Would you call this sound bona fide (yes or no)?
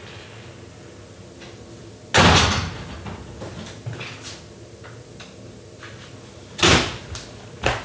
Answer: yes